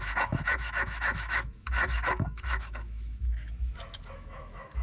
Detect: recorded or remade remade